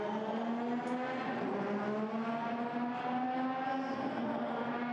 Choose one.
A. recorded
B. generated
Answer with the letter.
A